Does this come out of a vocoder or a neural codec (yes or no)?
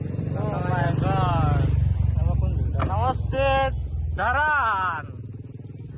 no